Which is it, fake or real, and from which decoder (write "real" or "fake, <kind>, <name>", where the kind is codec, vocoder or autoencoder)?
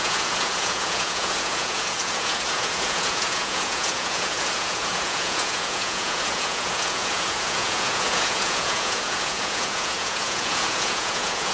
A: fake, vocoder, Vocos